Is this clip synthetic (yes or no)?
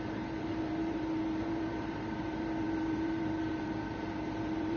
yes